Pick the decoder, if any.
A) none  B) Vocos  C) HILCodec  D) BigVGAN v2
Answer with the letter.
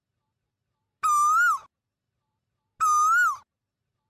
A